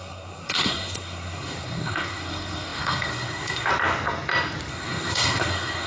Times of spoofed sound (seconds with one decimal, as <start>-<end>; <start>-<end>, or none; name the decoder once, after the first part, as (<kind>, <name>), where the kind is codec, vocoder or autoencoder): 0.0-3.7 (codec, SNAC); 4.7-5.9